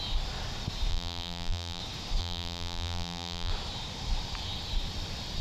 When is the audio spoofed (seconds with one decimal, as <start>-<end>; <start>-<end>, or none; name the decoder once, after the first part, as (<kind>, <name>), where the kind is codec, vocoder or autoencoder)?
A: 0.9-1.8 (vocoder, BigVGAN v2); 2.2-3.5